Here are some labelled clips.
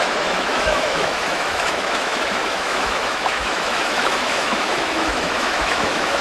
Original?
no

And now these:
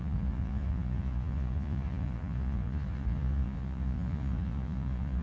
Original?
no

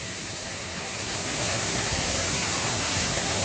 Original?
no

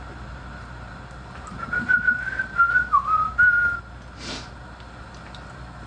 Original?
yes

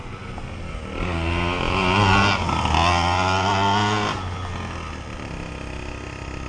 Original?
yes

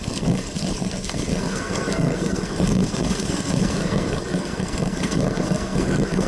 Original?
no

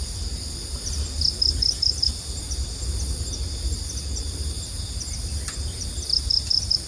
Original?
yes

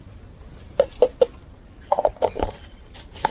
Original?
yes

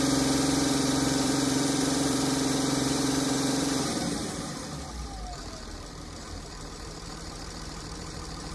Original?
no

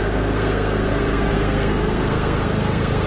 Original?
no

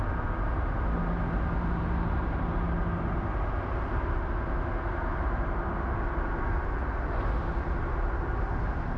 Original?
yes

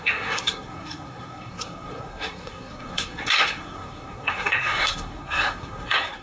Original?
no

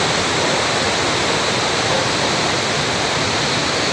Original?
yes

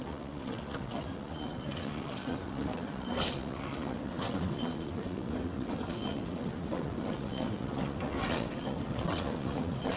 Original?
no